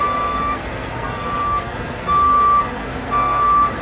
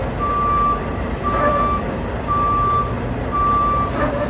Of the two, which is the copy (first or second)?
first